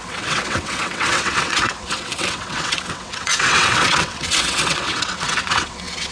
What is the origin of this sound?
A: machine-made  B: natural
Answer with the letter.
A